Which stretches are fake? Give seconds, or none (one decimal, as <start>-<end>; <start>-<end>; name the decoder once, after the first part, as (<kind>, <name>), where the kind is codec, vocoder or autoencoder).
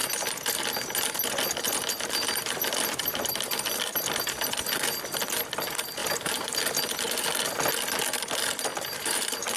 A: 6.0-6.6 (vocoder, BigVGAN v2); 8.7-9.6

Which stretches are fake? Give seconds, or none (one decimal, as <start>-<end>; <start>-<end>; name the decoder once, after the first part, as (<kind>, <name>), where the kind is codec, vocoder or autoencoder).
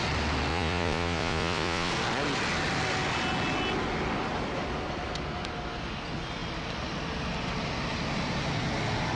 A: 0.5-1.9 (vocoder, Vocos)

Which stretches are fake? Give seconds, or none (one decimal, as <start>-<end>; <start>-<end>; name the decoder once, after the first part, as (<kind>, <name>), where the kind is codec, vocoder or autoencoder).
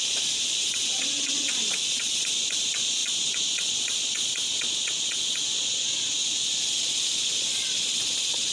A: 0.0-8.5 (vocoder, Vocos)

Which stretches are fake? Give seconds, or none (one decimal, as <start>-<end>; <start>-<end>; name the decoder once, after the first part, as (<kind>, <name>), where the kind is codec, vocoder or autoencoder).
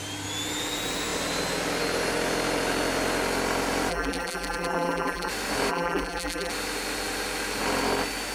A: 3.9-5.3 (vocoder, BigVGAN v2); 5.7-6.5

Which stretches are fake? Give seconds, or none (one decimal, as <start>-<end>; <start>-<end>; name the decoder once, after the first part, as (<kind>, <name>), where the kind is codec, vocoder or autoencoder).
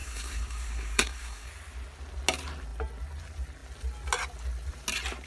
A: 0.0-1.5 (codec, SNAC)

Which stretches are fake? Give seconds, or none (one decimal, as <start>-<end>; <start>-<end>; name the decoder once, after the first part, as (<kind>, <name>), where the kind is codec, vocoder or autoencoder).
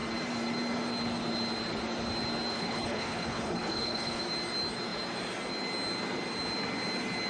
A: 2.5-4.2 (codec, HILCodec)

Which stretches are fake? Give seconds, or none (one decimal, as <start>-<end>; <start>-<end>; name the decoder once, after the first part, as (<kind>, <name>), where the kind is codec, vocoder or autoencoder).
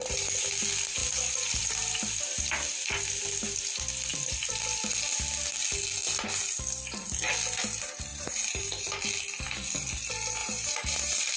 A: 8.1-8.8 (vocoder, BigVGAN v2); 10.4-11.4